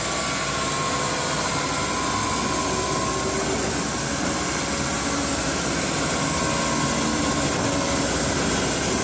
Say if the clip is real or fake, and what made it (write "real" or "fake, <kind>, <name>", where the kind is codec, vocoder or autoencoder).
real